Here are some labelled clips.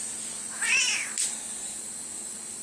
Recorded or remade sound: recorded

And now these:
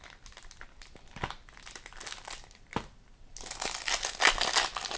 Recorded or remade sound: recorded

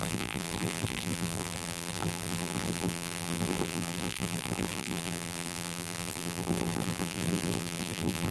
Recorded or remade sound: remade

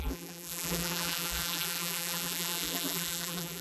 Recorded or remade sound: remade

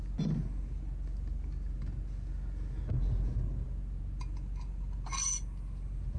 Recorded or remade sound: recorded